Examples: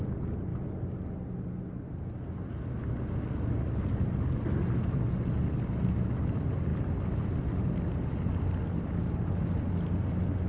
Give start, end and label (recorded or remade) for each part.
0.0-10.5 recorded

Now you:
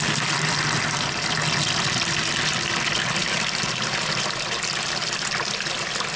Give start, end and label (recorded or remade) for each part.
0.0-3.2 recorded; 3.2-4.1 remade; 4.1-6.2 recorded

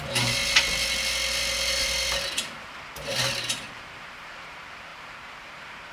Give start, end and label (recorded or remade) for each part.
0.0-0.4 remade; 0.4-3.2 recorded; 3.2-5.9 remade

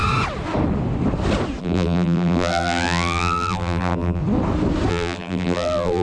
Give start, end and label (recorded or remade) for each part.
0.0-1.6 recorded; 1.6-4.2 remade; 4.2-4.9 recorded; 4.9-6.0 remade

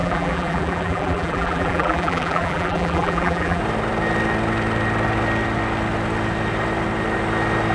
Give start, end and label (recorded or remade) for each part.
0.0-3.6 remade; 3.6-7.7 recorded